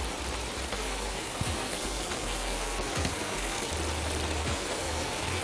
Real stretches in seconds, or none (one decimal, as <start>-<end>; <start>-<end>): 0.0-0.7; 3.7-4.4